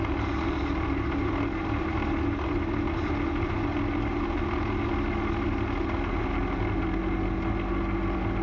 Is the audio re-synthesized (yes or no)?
no